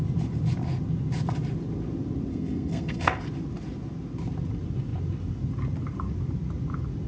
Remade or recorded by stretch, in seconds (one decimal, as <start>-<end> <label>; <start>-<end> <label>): 0.0-2.3 recorded; 2.3-3.2 remade; 3.2-7.1 recorded